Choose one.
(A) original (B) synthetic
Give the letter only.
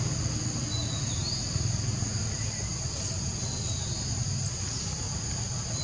A